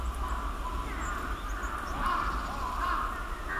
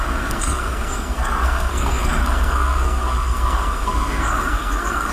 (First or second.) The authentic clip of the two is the first